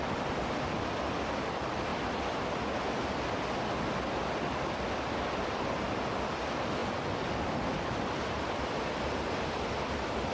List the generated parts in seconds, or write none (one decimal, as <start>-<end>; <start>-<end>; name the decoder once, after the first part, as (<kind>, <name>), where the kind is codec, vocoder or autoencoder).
6.8-7.3 (vocoder, Vocos)